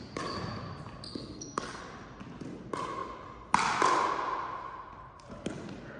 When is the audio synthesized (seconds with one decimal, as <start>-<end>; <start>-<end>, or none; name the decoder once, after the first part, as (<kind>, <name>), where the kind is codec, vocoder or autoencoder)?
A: 1.1-1.8 (codec, SNAC)

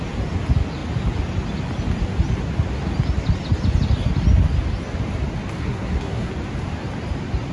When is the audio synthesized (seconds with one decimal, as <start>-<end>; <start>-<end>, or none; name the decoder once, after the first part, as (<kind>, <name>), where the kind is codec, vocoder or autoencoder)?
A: 5.6-6.3 (codec, SNAC)

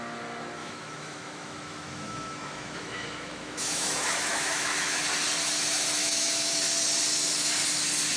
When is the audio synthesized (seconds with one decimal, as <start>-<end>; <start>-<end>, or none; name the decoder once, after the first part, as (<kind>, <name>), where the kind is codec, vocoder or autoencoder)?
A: 0.6-5.0 (autoencoder, DAC-VAE); 6.0-6.6

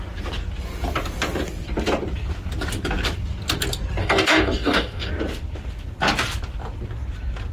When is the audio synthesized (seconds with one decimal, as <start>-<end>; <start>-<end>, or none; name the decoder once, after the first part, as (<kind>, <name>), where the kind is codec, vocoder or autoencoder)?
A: 4.0-5.1 (codec, DAC)

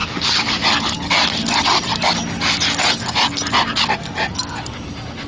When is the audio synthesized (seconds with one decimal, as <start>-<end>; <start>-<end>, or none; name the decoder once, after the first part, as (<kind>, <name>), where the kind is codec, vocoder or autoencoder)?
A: 0.0-2.1 (vocoder, BigVGAN v2)

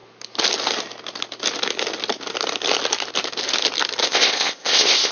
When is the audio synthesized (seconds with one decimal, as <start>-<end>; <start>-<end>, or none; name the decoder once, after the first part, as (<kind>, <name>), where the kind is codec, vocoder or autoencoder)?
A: 4.0-5.1 (codec, ZipCodec)

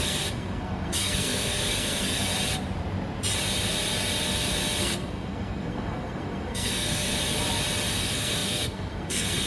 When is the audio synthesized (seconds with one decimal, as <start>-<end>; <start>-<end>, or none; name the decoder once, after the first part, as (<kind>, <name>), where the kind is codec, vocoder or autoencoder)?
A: 0.0-2.3 (codec, SNAC); 4.8-7.1; 7.9-9.5

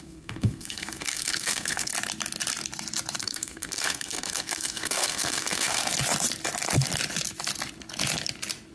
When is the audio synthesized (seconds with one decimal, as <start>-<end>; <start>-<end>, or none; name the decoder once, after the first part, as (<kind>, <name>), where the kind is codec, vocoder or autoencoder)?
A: 0.0-1.9 (codec, SNAC); 3.2-5.8